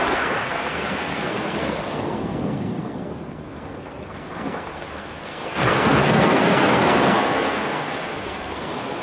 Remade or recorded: remade